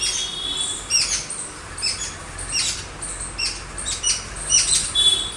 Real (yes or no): yes